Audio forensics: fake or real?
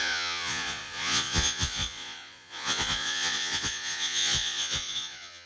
fake